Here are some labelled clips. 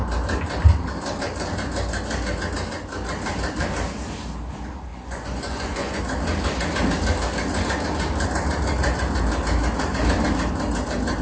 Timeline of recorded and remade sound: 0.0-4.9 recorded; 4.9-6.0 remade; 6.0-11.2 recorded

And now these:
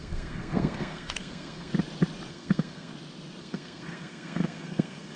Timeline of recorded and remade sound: 0.0-1.7 remade; 1.7-2.3 recorded; 2.3-2.9 remade; 2.9-3.4 recorded; 3.4-5.2 remade

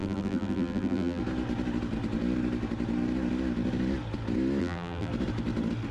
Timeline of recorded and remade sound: 0.0-1.2 remade; 1.2-4.6 recorded; 4.6-5.1 remade; 5.1-5.9 recorded

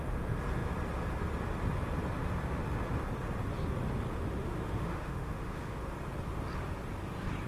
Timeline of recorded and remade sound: 0.0-4.1 recorded; 4.1-5.9 remade; 5.9-7.5 recorded

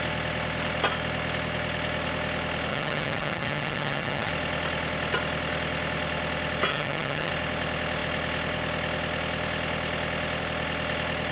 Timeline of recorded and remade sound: 0.0-2.7 recorded; 2.7-4.3 remade; 4.3-6.7 recorded; 6.7-7.3 remade; 7.3-11.3 recorded

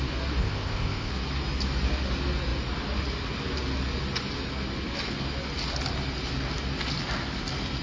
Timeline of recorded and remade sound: 0.0-0.4 recorded; 0.4-1.1 remade; 1.1-7.8 recorded

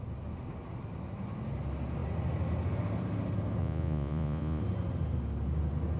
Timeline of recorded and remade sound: 0.0-3.6 recorded; 3.6-4.6 remade; 4.6-6.0 recorded